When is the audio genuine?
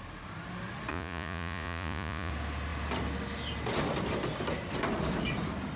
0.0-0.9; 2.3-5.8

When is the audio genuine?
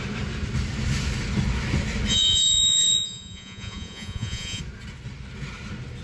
0.0-2.1; 4.6-6.0